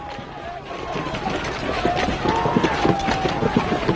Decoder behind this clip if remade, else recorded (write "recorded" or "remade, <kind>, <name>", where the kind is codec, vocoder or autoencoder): recorded